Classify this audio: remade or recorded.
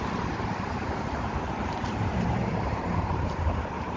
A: remade